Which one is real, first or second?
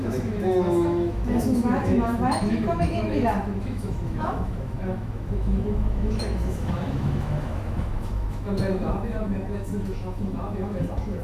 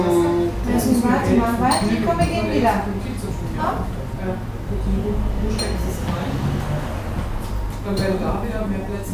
second